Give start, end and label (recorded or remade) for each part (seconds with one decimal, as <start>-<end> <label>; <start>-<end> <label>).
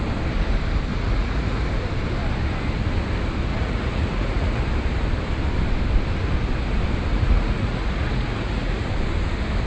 0.0-0.9 recorded; 0.9-1.7 remade; 1.7-3.5 recorded; 3.5-4.6 remade; 4.6-7.1 recorded; 7.1-8.9 remade; 8.9-9.7 recorded